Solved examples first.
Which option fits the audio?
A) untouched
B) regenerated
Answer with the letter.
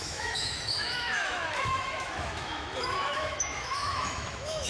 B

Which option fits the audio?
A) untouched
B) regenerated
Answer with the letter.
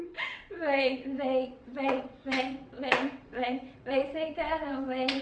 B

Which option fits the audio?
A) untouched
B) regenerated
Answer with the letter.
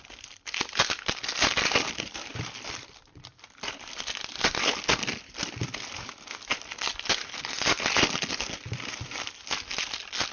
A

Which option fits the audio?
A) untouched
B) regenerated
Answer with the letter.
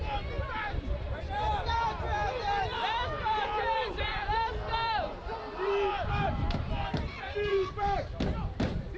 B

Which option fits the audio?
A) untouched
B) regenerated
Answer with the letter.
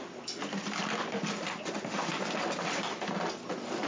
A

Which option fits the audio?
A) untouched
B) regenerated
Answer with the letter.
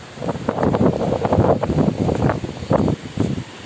A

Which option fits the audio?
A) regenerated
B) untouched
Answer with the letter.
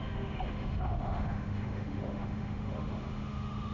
A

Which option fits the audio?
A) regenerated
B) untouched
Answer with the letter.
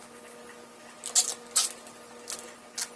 B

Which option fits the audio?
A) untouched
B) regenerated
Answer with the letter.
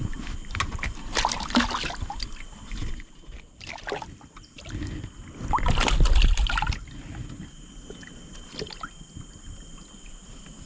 A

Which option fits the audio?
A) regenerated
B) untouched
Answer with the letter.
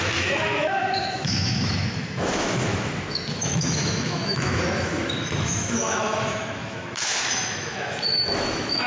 A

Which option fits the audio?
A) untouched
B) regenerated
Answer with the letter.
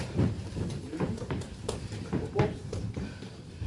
B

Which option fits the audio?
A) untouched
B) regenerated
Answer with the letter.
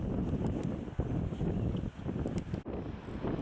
A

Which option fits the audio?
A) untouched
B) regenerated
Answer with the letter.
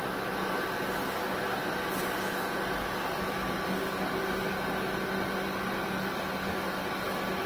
A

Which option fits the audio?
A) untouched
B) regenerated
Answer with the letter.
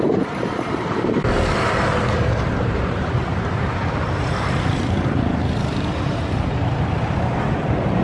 B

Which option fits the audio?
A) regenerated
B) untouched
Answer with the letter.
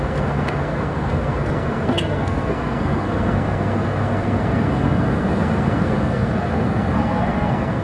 A